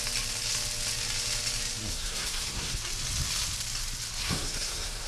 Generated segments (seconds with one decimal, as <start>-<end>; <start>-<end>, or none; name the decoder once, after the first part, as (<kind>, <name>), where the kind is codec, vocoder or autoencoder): 1.9-2.8 (codec, SNAC); 4.2-5.1

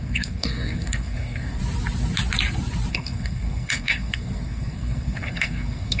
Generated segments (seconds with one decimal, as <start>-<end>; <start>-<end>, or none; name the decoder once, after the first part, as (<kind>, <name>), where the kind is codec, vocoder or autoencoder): 0.0-1.6 (codec, SNAC); 2.9-6.0

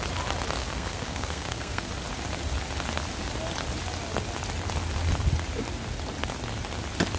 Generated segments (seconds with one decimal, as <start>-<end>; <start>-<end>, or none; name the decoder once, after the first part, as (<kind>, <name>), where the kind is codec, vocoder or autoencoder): 0.6-1.9 (codec, SNAC)